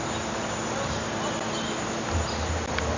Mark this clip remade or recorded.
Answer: recorded